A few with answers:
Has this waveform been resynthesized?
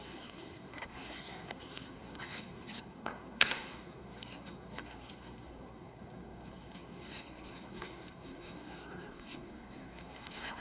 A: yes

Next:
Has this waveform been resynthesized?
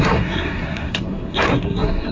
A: yes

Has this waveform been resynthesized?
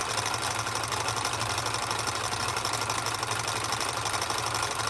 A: no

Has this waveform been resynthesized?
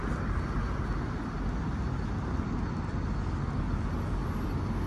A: no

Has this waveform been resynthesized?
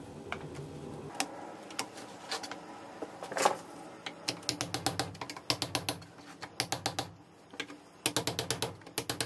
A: no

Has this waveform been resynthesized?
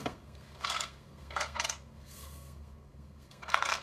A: yes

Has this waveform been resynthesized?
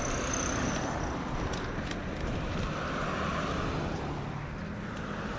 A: no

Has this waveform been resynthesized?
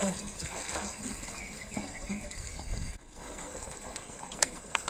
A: yes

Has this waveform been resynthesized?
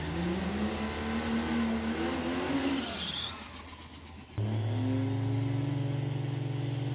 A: no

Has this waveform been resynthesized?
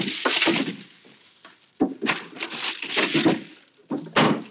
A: no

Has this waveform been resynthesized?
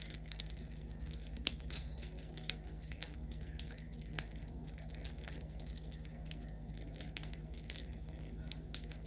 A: yes